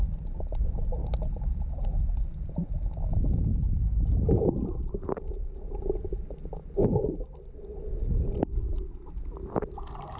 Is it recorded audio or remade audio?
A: recorded